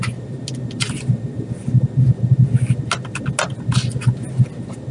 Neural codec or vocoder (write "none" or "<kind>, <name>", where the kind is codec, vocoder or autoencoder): none